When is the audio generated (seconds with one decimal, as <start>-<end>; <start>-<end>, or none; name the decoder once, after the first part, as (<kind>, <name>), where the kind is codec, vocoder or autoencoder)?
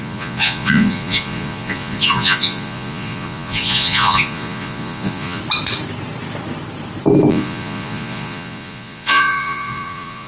0.0-5.4 (vocoder, Vocos); 7.3-10.3